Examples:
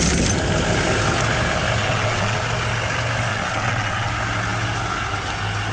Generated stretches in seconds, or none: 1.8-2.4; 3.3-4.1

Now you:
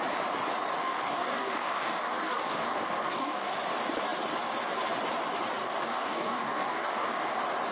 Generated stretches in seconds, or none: 0.8-3.5; 5.6-7.3

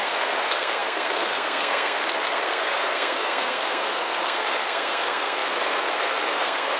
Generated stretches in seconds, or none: 0.0-6.8

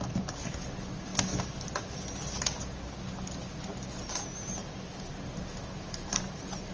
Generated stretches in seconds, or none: none